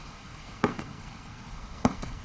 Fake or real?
fake